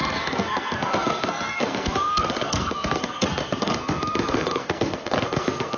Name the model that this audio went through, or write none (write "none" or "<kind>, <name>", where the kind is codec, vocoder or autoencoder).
codec, SNAC